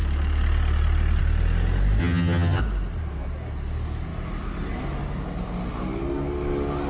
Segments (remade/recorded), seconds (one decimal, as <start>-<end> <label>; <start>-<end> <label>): 0.0-2.0 recorded; 2.0-2.6 remade; 2.6-6.9 recorded